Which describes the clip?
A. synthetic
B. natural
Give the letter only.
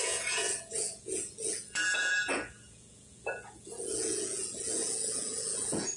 A